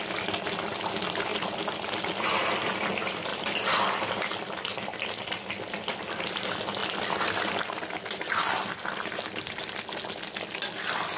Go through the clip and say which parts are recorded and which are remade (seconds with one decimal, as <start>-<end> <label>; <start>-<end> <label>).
0.0-11.2 recorded